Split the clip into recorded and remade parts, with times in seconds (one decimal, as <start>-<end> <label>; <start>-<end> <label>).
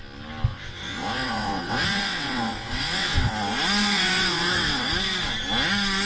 0.0-0.5 recorded; 0.5-3.3 remade; 3.3-3.8 recorded; 3.8-4.9 remade; 4.9-6.1 recorded